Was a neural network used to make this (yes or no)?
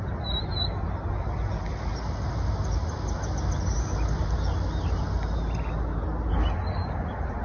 no